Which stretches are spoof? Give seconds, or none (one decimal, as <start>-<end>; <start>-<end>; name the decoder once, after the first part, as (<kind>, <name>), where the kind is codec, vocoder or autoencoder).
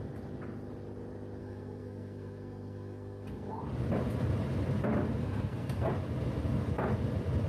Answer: 1.4-3.6 (codec, SNAC); 5.2-5.9